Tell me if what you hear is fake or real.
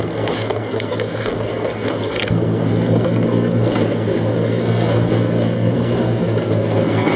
fake